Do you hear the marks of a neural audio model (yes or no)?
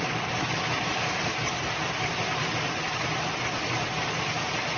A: no